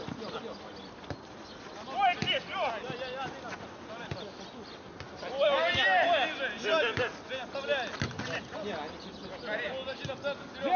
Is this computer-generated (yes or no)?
no